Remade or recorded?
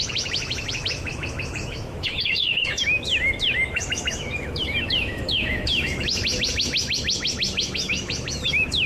remade